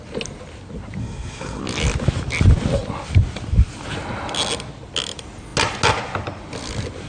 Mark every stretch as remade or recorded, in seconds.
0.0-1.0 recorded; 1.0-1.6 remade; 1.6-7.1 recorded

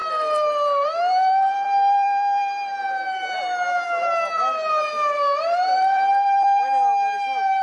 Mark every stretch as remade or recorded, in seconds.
0.0-7.6 remade

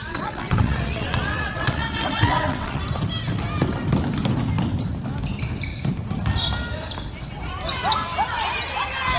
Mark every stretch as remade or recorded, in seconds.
0.0-2.8 remade; 2.8-9.2 recorded